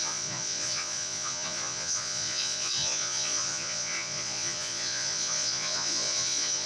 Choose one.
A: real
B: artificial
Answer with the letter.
B